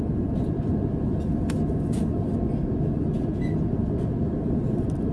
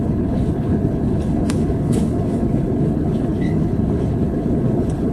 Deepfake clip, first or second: second